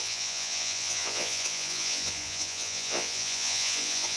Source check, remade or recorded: remade